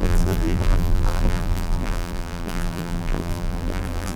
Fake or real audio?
fake